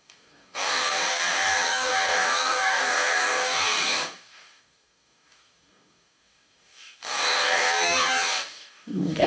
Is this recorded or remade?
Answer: remade